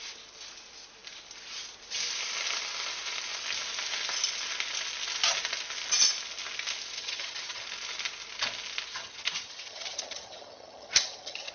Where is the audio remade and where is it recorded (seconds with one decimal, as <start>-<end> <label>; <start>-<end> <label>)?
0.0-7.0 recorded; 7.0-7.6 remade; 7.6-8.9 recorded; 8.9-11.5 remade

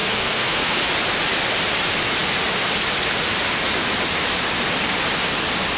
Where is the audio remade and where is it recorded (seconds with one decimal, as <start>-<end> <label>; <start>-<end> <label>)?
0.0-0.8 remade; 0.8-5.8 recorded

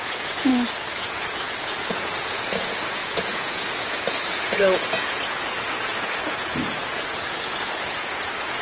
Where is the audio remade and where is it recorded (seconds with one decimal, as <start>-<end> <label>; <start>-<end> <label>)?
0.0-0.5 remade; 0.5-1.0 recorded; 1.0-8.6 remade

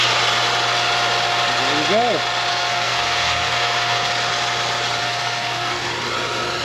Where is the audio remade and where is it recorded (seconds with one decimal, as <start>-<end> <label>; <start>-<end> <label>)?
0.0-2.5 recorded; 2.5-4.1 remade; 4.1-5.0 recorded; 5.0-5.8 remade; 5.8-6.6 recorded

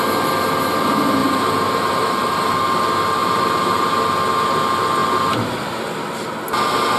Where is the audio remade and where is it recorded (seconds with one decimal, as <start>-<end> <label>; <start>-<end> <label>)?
0.0-1.2 recorded; 1.2-2.5 remade; 2.5-3.2 recorded; 3.2-3.9 remade; 3.9-7.0 recorded